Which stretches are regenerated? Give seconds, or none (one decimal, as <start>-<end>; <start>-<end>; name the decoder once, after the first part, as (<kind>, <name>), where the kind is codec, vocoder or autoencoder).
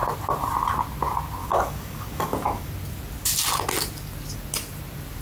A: 1.4-2.7 (codec, DAC)